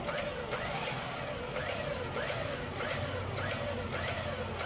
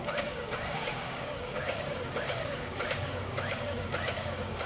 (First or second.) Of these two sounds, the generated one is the second